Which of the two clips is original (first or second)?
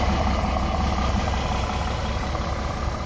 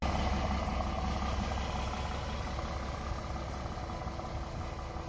second